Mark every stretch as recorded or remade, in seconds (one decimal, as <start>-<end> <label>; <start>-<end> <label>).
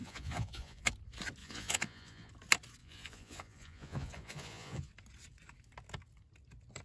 0.0-0.9 remade; 0.9-1.4 recorded; 1.4-2.3 remade; 2.3-2.8 recorded; 2.8-4.9 remade; 4.9-6.8 recorded